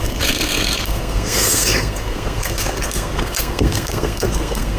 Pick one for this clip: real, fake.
fake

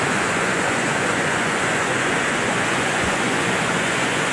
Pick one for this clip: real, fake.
fake